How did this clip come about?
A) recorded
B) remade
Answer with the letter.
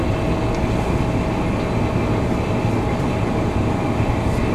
A